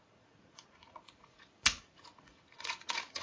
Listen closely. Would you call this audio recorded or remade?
remade